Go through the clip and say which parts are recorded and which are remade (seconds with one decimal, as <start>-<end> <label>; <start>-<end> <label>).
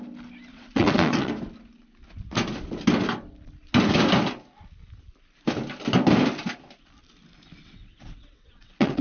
0.0-0.5 recorded; 0.5-1.3 remade; 1.3-7.6 recorded; 7.6-9.0 remade